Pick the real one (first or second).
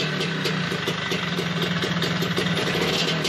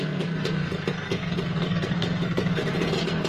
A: first